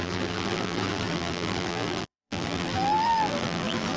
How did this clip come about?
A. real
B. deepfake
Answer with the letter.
B